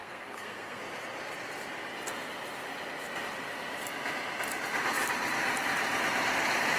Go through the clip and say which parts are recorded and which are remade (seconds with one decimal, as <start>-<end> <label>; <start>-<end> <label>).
0.0-0.8 remade; 0.8-6.8 recorded